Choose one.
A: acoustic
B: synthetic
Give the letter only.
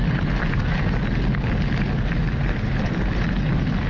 A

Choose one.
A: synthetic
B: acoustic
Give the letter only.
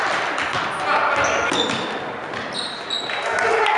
B